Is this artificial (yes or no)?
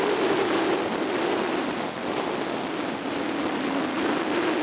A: no